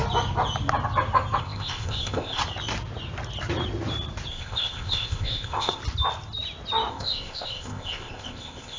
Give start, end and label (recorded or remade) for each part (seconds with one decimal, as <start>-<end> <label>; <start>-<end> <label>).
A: 0.0-1.4 recorded; 1.4-2.4 remade; 2.4-4.3 recorded; 4.3-5.8 remade; 5.8-6.9 recorded; 6.9-8.8 remade